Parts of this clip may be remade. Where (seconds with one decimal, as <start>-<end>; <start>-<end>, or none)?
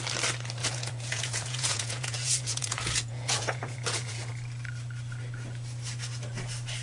0.6-4.3